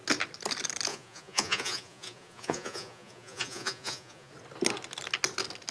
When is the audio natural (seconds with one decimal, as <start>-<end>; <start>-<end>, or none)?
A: 0.0-0.9; 4.3-5.7